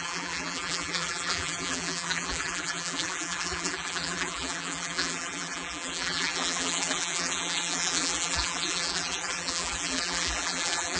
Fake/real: fake